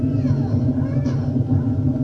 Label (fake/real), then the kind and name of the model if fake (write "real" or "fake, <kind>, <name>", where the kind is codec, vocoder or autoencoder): real